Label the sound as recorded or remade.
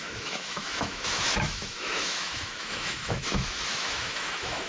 remade